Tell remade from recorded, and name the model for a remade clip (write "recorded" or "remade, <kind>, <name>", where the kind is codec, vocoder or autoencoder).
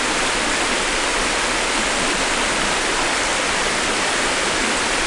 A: recorded